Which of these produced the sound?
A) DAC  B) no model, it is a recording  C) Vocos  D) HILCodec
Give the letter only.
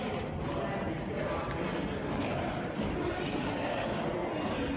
B